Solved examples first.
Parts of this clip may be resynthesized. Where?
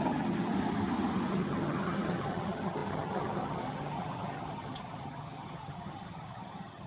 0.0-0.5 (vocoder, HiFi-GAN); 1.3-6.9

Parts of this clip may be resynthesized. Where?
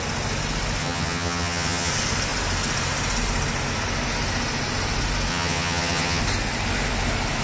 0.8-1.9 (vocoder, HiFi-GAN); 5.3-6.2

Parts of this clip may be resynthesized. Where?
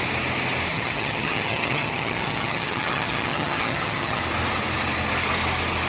0.7-4.2 (vocoder, HiFi-GAN)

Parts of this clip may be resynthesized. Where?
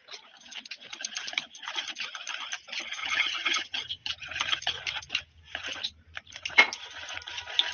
3.0-4.1 (vocoder, HiFi-GAN)